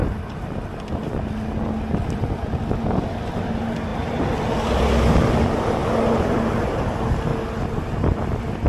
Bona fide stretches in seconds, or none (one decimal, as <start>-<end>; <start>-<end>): 0.0-3.0; 5.8-6.8; 7.3-8.1